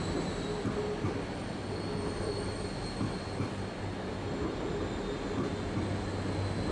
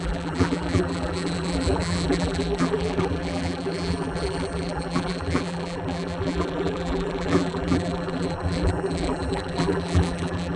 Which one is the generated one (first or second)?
second